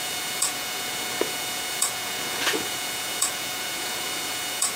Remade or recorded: remade